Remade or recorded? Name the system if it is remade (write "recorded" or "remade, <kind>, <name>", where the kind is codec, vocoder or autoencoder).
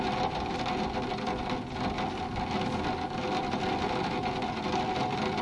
recorded